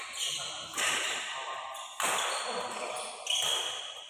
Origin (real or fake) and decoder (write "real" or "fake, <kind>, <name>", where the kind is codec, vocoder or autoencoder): real